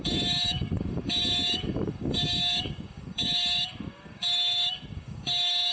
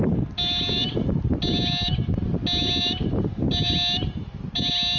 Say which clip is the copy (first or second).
first